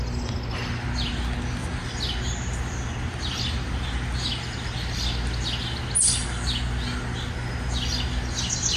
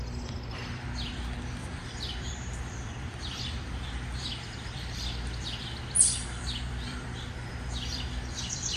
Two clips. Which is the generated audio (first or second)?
second